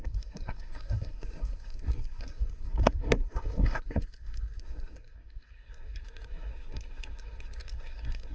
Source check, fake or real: fake